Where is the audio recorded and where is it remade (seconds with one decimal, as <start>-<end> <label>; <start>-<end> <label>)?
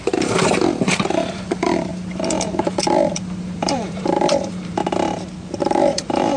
0.0-4.8 remade; 4.8-5.6 recorded; 5.6-6.4 remade